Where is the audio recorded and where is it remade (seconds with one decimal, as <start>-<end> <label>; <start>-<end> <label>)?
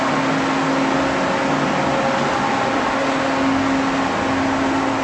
0.0-5.0 recorded